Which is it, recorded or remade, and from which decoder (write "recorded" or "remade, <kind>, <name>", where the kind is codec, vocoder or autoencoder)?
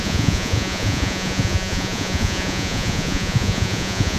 remade, vocoder, Vocos